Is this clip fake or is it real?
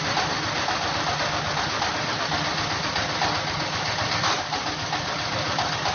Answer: real